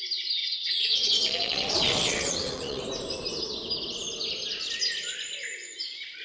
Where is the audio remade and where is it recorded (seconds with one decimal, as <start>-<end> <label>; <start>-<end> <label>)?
0.0-0.4 recorded; 0.4-2.8 remade; 2.8-6.2 recorded